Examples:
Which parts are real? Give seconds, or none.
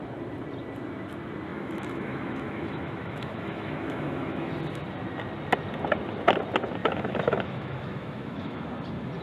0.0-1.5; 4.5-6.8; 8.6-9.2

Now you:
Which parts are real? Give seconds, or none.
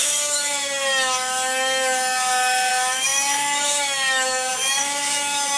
none